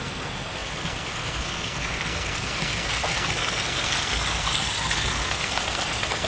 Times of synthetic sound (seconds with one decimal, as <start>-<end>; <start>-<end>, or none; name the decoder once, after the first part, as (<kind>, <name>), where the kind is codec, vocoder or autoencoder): 0.0-6.3 (codec, SNAC)